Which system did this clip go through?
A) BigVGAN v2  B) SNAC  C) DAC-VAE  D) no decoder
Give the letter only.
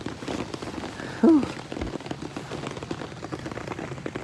D